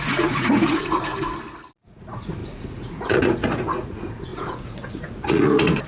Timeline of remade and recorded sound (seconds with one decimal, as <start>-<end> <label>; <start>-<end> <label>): 0.0-1.1 remade; 1.1-1.8 recorded; 1.8-5.9 remade